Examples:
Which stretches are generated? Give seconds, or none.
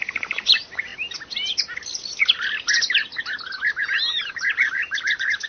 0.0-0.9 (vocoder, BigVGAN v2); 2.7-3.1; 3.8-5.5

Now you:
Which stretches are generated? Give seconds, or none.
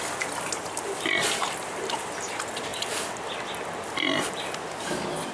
none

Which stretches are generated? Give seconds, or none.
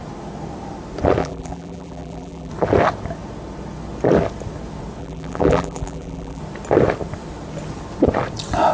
1.2-2.5 (vocoder, BigVGAN v2); 5.0-6.4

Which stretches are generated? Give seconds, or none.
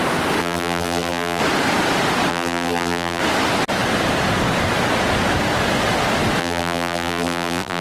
0.4-1.4 (vocoder, BigVGAN v2); 2.3-3.2; 6.4-7.8